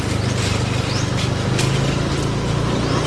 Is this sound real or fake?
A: real